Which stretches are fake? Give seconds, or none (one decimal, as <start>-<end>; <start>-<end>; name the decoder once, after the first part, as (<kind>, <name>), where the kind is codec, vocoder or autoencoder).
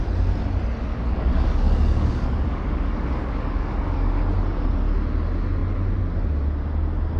0.9-4.2 (codec, DAC)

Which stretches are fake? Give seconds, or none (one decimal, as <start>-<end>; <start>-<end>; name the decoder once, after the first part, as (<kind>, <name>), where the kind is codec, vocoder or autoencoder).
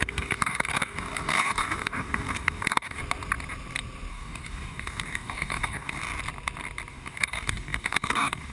0.0-3.0 (codec, DAC); 4.1-6.0; 6.9-8.5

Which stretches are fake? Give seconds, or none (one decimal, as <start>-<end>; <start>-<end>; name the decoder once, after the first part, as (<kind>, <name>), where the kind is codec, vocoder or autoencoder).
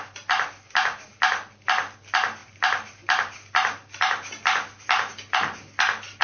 none